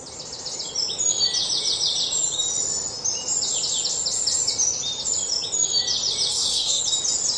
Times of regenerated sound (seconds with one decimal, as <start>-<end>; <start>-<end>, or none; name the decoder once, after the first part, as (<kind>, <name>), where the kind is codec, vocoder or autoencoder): 6.3-6.8 (codec, SNAC)